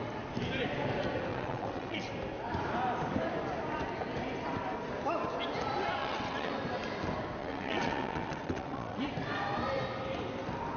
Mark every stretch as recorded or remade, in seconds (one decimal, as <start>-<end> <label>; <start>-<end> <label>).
0.0-1.3 recorded; 1.3-2.1 remade; 2.1-6.0 recorded; 6.0-6.5 remade; 6.5-7.4 recorded; 7.4-9.0 remade; 9.0-10.8 recorded